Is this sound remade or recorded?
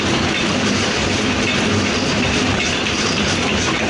recorded